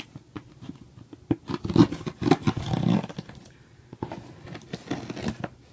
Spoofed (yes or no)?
no